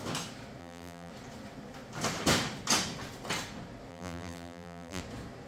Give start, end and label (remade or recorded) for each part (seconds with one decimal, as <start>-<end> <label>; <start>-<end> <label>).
0.0-0.6 recorded; 0.6-1.1 remade; 1.1-3.9 recorded; 3.9-5.0 remade; 5.0-5.5 recorded